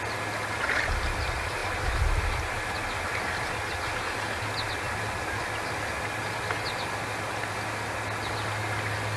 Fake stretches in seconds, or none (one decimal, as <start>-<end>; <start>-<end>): none